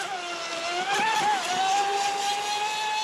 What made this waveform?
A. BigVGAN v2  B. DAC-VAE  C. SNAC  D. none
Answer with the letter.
D